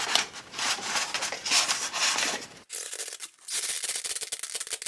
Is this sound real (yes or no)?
yes